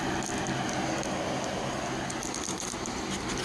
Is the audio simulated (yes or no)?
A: no